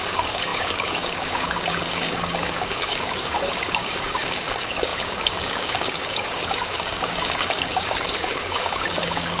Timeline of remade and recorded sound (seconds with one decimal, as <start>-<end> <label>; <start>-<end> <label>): 0.0-9.4 remade